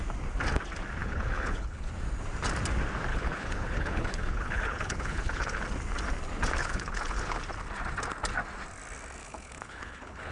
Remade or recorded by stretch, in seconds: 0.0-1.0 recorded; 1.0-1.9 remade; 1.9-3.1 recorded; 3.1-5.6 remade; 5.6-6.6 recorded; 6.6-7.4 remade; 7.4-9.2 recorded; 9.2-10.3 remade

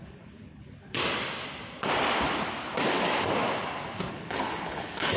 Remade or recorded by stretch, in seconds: 0.0-1.0 remade; 1.0-4.1 recorded; 4.1-5.2 remade